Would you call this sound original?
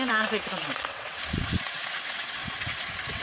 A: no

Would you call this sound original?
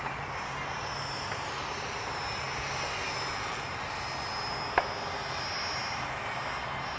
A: yes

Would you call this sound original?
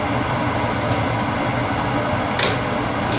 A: yes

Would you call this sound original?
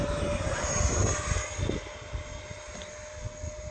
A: yes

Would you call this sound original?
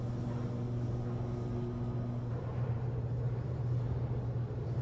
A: yes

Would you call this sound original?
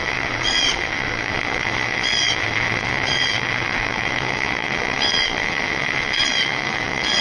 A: no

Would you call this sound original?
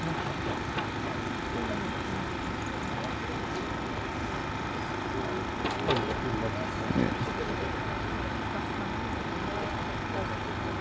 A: yes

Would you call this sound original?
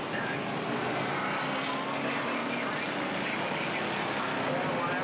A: yes